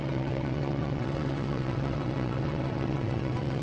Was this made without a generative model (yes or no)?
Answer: no